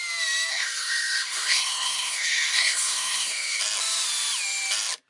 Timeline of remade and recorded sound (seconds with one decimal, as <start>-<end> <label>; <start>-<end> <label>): 0.0-0.5 recorded; 0.5-3.6 remade; 3.6-5.1 recorded

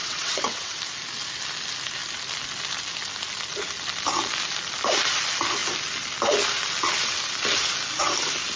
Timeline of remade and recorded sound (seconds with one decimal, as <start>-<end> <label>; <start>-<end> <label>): 0.0-0.8 remade; 0.8-8.6 recorded

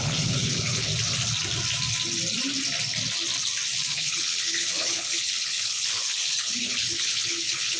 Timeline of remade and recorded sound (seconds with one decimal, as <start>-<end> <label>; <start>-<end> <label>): 0.0-0.9 remade; 0.9-3.9 recorded; 3.9-7.8 remade

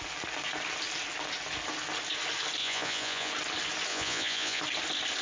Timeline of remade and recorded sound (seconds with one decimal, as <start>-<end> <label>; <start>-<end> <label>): 0.0-2.6 recorded; 2.6-3.3 remade; 3.3-3.9 recorded; 3.9-4.6 remade; 4.6-5.2 recorded

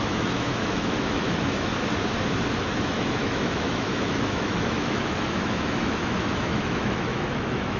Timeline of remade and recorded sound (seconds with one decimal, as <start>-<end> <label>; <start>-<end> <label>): 0.0-1.7 remade; 1.7-2.6 recorded; 2.6-7.8 remade

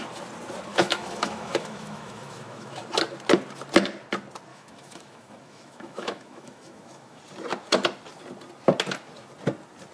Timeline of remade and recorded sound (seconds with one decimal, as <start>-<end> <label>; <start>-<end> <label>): 0.0-0.7 recorded; 0.7-2.8 remade; 2.8-4.5 recorded; 4.5-7.2 remade; 7.2-9.9 recorded

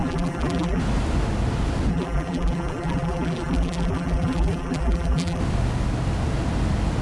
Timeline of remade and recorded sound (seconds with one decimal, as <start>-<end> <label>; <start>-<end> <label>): 0.0-0.8 remade; 0.8-1.9 recorded; 1.9-5.4 remade; 5.4-7.0 recorded

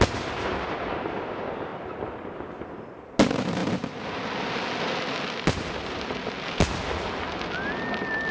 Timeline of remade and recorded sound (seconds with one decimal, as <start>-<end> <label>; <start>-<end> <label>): 0.0-8.3 recorded